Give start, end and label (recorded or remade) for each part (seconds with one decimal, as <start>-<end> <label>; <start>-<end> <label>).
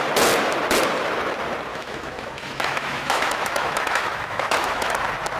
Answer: 0.0-1.7 recorded; 1.7-4.9 remade; 4.9-5.4 recorded